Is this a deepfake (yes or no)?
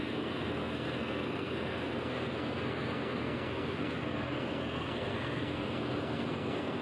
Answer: yes